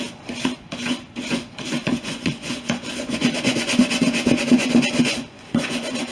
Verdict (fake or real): fake